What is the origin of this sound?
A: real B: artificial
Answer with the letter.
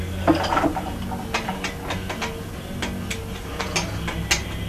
A